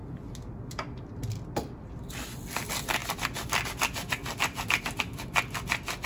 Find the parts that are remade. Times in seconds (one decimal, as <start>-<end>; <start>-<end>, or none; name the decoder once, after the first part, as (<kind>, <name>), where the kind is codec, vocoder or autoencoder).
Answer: none